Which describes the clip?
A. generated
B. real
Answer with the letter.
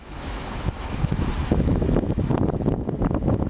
A